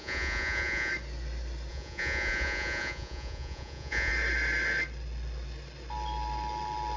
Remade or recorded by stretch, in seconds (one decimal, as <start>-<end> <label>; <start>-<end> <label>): 0.0-0.9 remade; 0.9-1.7 recorded; 1.7-4.1 remade; 4.1-7.0 recorded

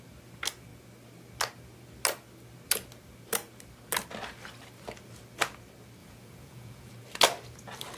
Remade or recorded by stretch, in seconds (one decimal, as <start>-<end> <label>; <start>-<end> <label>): 0.0-6.0 recorded; 6.0-6.9 remade; 6.9-8.0 recorded

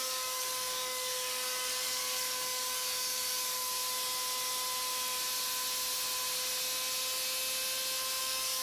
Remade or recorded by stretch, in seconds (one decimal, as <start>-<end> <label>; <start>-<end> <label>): 0.0-3.8 remade; 3.8-8.2 recorded; 8.2-8.6 remade

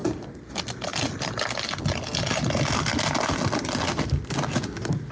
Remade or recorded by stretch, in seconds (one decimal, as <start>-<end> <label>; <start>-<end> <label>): 0.0-5.1 recorded